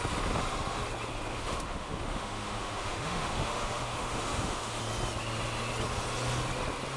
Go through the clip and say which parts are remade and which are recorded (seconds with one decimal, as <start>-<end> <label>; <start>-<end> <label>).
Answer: 0.0-1.3 recorded; 1.3-4.8 remade; 4.8-7.0 recorded